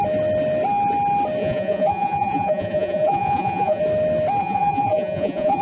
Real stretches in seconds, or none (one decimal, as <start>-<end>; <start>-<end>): 0.0-1.4; 3.8-4.4